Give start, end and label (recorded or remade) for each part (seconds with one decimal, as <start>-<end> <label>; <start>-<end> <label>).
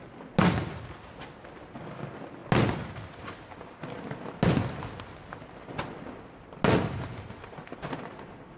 0.0-8.6 recorded